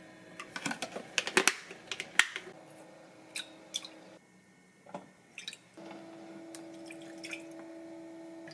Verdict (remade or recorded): recorded